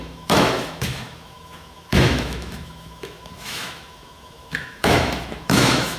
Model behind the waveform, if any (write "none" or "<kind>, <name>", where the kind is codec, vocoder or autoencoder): autoencoder, DAC-VAE